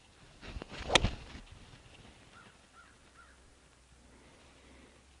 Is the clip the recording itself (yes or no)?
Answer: yes